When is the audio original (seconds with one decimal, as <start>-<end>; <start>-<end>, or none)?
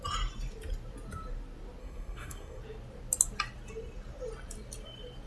0.0-1.8; 2.6-5.3